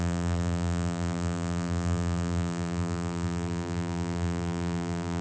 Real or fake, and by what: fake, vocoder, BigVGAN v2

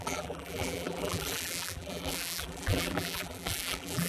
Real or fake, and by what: fake, vocoder, BigVGAN v2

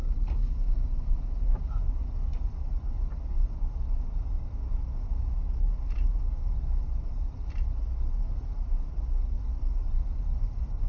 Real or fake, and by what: real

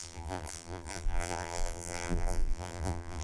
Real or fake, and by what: fake, vocoder, BigVGAN v2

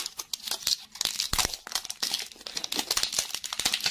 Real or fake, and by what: real